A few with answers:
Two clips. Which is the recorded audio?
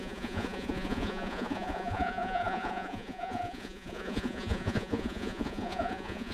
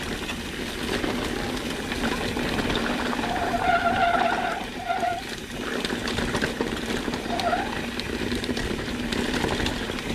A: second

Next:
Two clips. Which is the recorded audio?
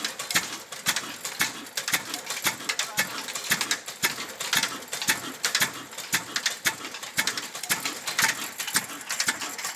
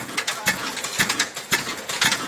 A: first